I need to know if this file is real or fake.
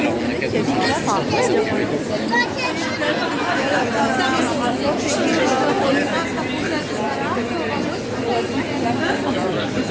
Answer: real